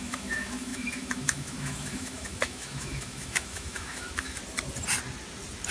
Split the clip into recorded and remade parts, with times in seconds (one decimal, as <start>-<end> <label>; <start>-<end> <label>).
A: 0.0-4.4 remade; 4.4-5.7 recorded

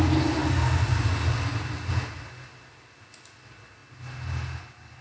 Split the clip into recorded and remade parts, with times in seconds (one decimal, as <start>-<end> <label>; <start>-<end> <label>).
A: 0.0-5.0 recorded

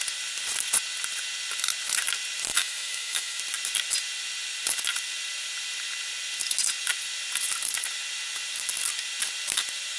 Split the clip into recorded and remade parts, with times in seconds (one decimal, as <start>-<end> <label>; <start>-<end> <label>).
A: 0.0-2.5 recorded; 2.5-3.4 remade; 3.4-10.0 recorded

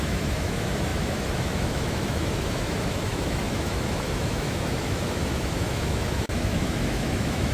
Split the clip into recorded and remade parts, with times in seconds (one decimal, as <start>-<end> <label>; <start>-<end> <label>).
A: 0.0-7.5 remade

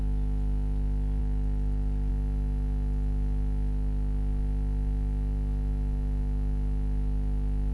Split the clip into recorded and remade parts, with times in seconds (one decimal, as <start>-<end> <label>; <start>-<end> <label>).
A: 0.0-1.2 recorded; 1.2-2.1 remade; 2.1-7.7 recorded

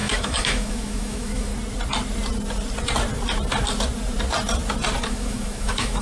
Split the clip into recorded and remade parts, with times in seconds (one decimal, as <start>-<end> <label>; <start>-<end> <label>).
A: 0.0-1.5 remade; 1.5-5.1 recorded; 5.1-6.0 remade